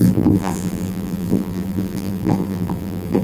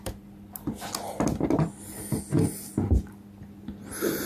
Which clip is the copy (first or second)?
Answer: first